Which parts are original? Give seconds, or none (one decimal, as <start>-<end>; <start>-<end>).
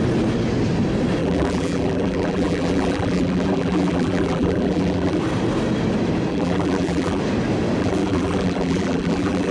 0.0-1.2; 5.2-6.3; 7.2-7.8